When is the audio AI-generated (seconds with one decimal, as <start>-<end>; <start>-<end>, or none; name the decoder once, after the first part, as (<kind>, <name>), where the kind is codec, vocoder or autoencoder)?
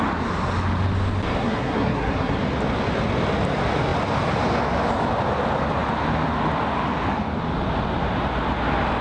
1.4-2.4 (codec, SNAC)